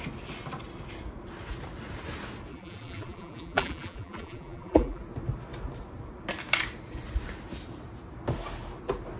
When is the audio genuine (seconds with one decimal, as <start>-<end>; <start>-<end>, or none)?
0.0-2.5; 5.0-9.2